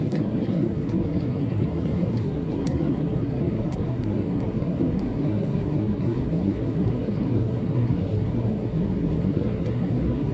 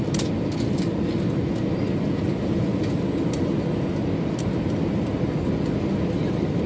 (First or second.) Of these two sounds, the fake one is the first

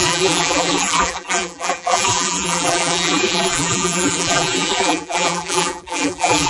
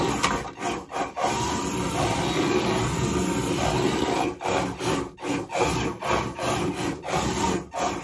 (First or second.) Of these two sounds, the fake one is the first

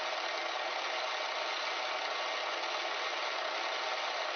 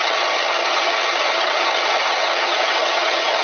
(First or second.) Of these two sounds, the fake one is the second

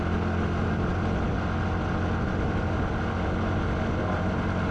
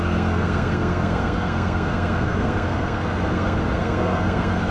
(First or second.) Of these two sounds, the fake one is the second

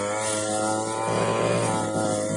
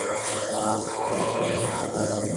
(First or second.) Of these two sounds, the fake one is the second